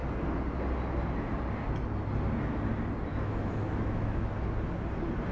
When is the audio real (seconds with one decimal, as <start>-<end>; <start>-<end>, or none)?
0.0-3.1; 4.3-5.3